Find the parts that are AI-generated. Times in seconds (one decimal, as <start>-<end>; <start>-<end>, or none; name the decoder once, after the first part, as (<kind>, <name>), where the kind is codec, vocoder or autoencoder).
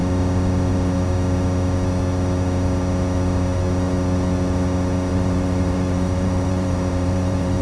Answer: 5.1-7.6 (vocoder, BigVGAN v2)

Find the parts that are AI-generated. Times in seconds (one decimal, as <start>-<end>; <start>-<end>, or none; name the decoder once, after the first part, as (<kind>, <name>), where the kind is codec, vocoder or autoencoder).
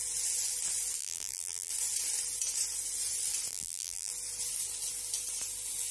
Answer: 1.0-1.7 (vocoder, BigVGAN v2); 3.5-4.1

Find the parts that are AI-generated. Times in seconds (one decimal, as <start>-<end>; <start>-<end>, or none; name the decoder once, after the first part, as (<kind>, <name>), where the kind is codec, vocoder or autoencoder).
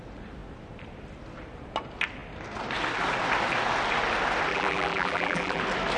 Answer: 4.5-5.6 (vocoder, BigVGAN v2)